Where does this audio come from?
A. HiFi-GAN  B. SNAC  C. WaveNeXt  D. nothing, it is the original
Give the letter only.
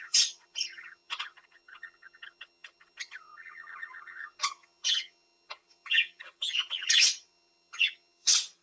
A